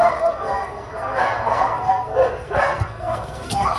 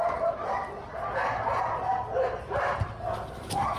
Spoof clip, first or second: first